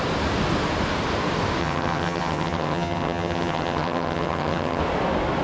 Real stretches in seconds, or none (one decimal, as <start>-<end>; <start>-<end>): 0.0-1.6; 4.8-5.4